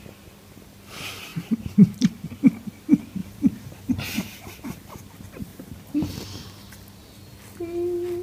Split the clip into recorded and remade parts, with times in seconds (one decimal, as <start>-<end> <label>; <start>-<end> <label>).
0.0-1.3 recorded; 1.3-2.3 remade; 2.3-3.2 recorded; 3.2-3.9 remade; 3.9-5.5 recorded; 5.5-6.1 remade; 6.1-8.2 recorded